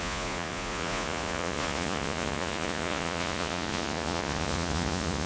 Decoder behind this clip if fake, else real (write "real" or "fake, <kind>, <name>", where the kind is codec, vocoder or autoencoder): fake, vocoder, Vocos